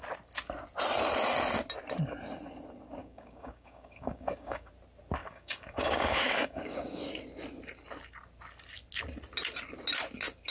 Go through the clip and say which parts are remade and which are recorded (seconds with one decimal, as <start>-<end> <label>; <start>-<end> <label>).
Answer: 0.0-3.0 recorded; 3.0-4.7 remade; 4.7-5.2 recorded; 5.2-7.0 remade; 7.0-10.5 recorded